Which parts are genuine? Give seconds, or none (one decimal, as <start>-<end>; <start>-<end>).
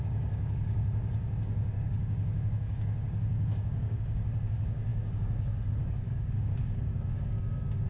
none